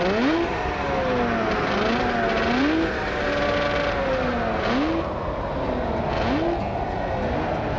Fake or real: real